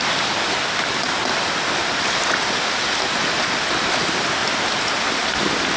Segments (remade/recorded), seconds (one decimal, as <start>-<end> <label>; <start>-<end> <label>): 0.0-5.8 recorded